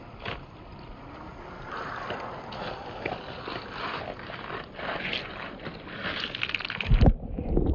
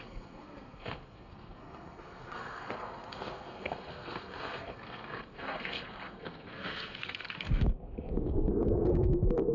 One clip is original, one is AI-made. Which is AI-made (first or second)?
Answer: second